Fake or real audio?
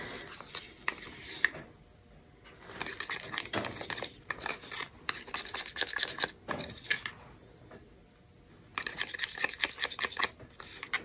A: real